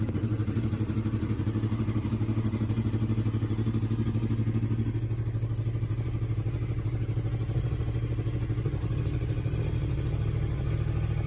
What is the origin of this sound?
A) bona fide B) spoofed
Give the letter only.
A